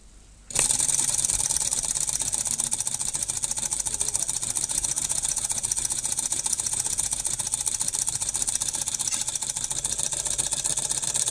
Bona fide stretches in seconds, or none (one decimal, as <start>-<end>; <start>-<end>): 0.0-4.7; 7.4-11.3